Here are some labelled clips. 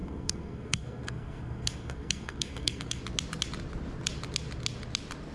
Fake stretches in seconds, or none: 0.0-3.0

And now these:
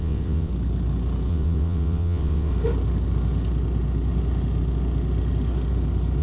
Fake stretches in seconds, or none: 0.0-0.5; 1.3-2.5

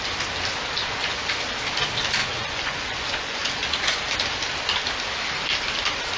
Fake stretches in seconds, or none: 0.8-1.3; 2.2-4.0

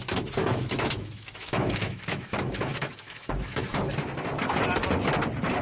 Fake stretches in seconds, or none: 0.4-3.8

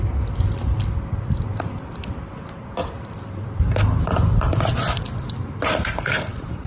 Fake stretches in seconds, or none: 5.7-6.3

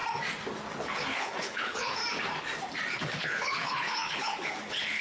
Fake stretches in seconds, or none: 0.8-2.0; 3.0-5.0

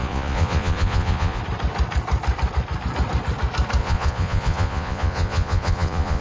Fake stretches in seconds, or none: 0.0-1.4; 3.8-6.2